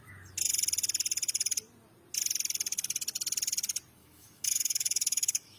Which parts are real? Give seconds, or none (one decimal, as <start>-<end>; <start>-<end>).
0.0-4.0